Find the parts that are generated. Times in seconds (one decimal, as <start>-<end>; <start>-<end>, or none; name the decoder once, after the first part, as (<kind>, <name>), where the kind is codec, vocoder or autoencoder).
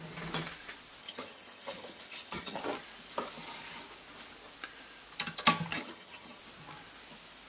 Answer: 1.0-2.6 (vocoder, HiFi-GAN); 5.7-6.4